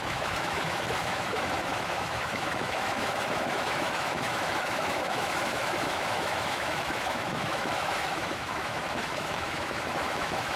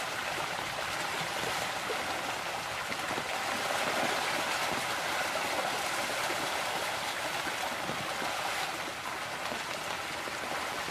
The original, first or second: second